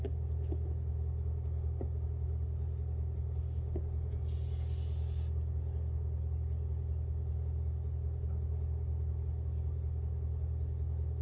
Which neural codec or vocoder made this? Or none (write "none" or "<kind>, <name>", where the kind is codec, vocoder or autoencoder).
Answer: none